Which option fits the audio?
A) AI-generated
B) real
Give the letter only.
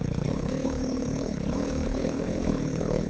A